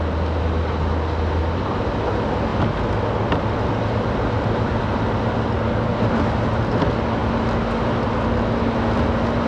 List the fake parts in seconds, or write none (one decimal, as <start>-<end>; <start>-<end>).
none